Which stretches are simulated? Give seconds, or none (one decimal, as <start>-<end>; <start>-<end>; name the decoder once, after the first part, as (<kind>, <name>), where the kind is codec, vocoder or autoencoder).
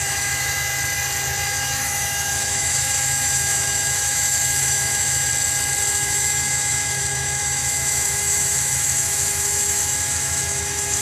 0.0-0.7 (autoencoder, DAC-VAE); 1.4-5.3; 5.9-11.0